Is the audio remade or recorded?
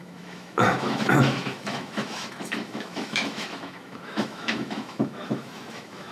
remade